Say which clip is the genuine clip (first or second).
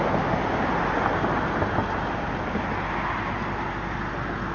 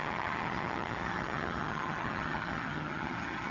first